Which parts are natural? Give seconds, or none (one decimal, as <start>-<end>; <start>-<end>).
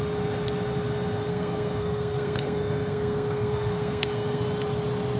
0.0-1.3; 4.4-5.2